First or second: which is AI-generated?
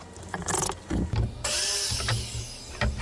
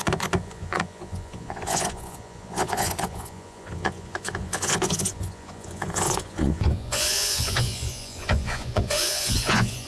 second